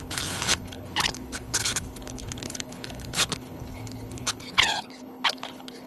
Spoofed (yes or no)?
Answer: yes